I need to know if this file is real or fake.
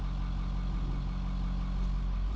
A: real